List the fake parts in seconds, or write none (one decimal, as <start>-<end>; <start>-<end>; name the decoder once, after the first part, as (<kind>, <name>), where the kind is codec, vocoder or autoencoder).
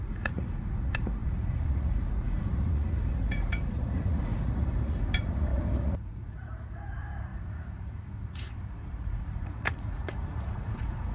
0.0-11.1 (vocoder, Vocos)